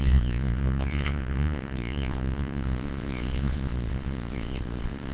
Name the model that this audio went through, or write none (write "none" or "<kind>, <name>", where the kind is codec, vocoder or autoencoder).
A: vocoder, Vocos